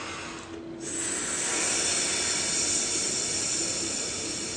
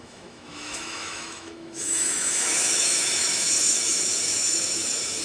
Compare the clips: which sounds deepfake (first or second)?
second